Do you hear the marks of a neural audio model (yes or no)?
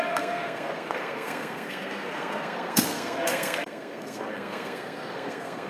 yes